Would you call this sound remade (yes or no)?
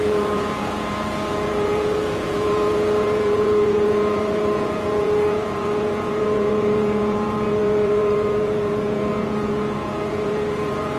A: yes